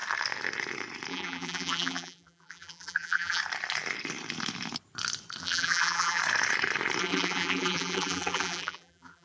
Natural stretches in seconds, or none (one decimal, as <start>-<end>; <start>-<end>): 0.0-1.1; 3.4-5.4; 6.2-7.0